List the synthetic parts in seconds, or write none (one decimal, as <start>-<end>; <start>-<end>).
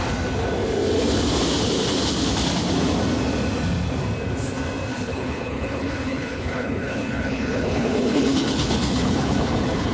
4.9-9.9